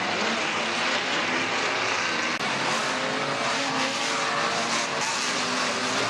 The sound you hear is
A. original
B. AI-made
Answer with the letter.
A